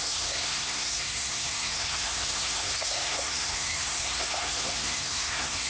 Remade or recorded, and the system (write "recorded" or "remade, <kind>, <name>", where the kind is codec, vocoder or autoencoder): remade, codec, SNAC